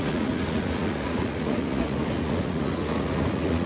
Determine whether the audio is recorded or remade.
remade